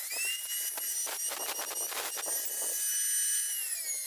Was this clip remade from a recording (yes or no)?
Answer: no